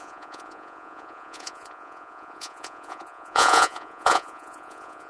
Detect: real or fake fake